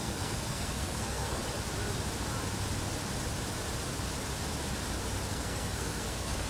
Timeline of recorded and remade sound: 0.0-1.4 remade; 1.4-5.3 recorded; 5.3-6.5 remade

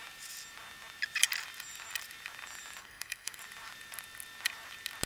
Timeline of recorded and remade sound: 0.0-2.8 recorded; 2.8-3.4 remade; 3.4-5.1 recorded

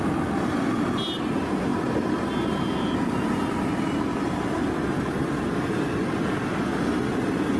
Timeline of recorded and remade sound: 0.0-7.6 recorded